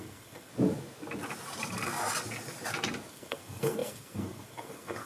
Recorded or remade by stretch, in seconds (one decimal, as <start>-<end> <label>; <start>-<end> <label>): 0.0-0.5 remade; 0.5-3.1 recorded; 3.1-5.1 remade